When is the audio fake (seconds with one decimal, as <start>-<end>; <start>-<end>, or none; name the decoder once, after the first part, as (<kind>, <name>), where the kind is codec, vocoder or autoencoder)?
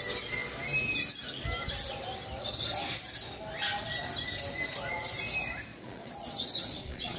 5.7-7.2 (vocoder, Vocos)